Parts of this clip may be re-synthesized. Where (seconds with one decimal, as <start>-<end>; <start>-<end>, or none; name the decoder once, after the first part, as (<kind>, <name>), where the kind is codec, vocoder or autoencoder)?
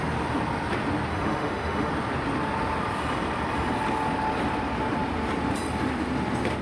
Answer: 1.1-1.9 (autoencoder, DAC-VAE)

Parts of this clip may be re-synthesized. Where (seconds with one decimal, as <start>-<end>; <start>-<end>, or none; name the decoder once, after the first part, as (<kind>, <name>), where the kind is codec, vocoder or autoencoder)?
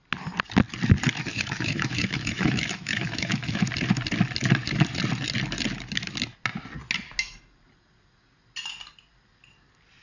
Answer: 1.3-3.6 (autoencoder, DAC-VAE)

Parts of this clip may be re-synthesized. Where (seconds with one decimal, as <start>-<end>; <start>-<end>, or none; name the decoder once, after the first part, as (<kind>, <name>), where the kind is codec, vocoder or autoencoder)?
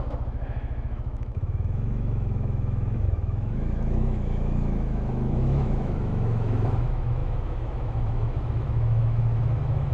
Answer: 0.0-9.9 (autoencoder, DAC-VAE)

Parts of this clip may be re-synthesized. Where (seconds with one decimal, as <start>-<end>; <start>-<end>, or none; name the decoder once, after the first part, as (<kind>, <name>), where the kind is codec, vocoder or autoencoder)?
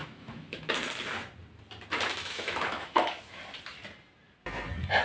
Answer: 0.0-0.7 (autoencoder, DAC-VAE); 2.2-3.4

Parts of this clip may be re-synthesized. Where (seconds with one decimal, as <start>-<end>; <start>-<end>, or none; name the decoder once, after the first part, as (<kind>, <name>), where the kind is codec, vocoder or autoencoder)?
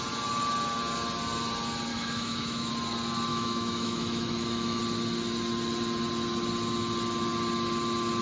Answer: 1.9-2.7 (autoencoder, DAC-VAE); 3.3-4.8